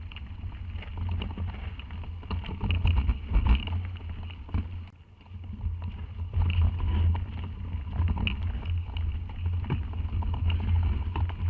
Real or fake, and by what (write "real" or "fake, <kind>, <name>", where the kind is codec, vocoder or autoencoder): real